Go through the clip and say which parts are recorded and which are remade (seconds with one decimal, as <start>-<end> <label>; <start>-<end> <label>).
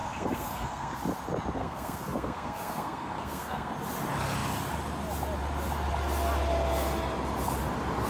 0.0-1.0 remade; 1.0-1.6 recorded; 1.6-3.7 remade; 3.7-8.1 recorded